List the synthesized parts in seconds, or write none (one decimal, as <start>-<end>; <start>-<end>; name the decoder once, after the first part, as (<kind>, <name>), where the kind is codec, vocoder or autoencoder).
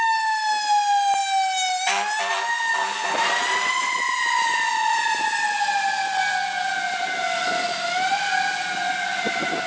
none